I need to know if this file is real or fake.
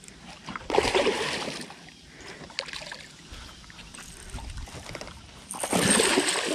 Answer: real